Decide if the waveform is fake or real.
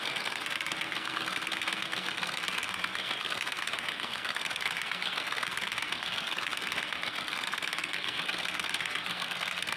fake